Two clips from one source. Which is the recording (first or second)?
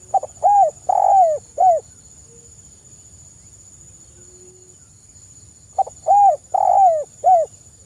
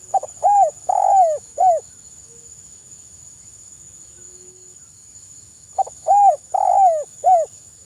first